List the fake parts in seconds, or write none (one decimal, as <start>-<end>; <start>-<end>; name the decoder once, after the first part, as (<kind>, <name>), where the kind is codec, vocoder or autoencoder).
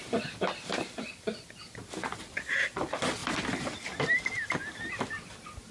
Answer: none